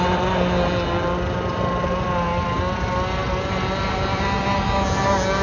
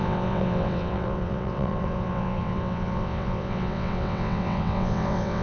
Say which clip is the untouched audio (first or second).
first